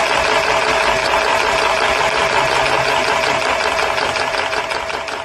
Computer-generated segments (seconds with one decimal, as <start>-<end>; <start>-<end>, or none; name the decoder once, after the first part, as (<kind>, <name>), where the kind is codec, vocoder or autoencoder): 0.0-1.0 (vocoder, BigVGAN v2); 2.0-3.0; 4.3-5.2